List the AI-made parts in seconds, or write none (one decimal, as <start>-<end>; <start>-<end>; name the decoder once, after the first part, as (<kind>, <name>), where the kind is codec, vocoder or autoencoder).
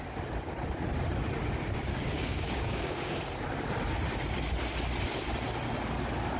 1.9-3.2 (codec, DAC)